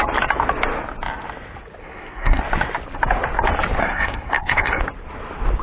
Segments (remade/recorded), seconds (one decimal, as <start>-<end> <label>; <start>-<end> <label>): 0.0-1.8 recorded; 1.8-2.4 remade; 2.4-3.8 recorded; 3.8-4.8 remade; 4.8-5.6 recorded